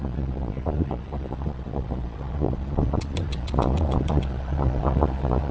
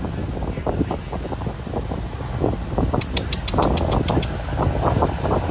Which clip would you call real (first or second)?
second